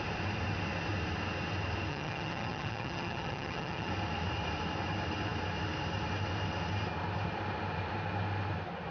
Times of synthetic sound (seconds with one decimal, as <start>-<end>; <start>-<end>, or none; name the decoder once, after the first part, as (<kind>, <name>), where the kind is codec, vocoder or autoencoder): 1.9-3.9 (vocoder, HiFi-GAN)